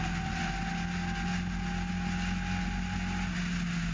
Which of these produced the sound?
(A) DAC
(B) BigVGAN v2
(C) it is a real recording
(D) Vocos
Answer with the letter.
C